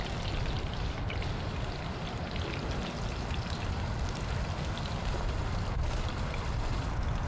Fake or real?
real